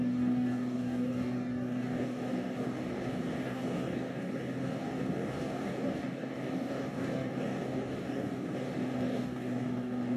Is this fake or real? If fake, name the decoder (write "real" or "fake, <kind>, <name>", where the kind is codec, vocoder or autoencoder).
fake, codec, DAC